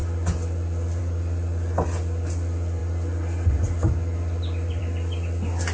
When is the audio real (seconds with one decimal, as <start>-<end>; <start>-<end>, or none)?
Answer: 0.0-5.7